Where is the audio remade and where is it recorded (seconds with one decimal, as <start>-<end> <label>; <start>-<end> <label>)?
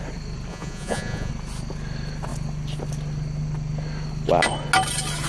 0.0-0.5 recorded; 0.5-1.3 remade; 1.3-5.3 recorded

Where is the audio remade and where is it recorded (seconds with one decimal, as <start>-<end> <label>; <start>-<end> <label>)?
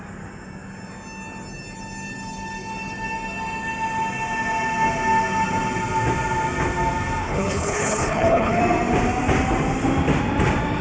0.0-7.2 recorded; 7.2-8.6 remade; 8.6-10.8 recorded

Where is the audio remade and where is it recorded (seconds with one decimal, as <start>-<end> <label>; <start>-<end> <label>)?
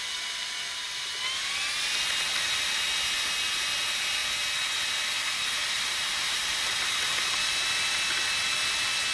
0.0-9.1 recorded